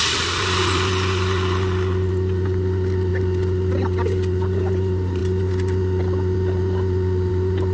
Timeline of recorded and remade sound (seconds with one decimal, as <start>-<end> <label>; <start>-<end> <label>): 0.0-7.7 recorded